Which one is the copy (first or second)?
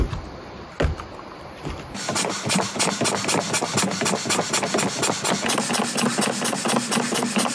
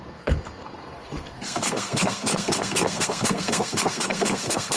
second